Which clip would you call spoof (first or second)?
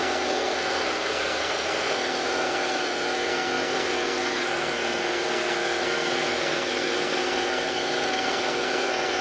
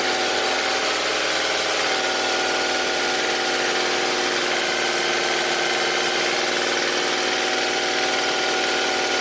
first